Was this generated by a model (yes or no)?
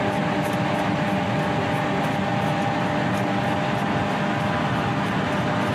no